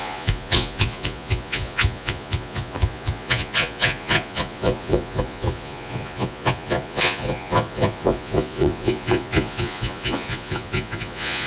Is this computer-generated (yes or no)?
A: yes